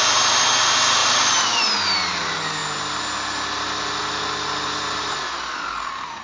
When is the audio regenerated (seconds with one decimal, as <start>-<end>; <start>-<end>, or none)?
1.0-1.6